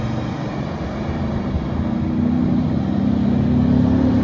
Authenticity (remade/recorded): recorded